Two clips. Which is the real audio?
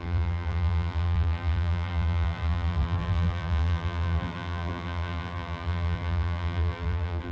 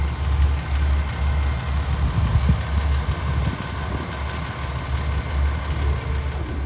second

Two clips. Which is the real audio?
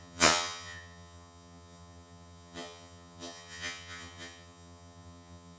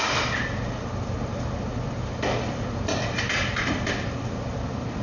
second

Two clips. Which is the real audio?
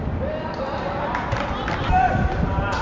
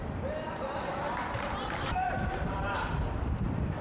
first